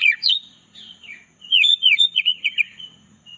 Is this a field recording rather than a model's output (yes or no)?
no